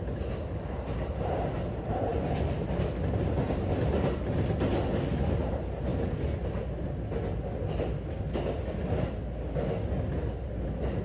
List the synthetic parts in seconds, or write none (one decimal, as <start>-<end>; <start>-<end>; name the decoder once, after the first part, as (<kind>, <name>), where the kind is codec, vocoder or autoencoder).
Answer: none